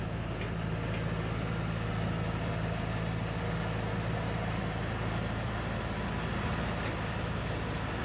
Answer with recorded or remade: recorded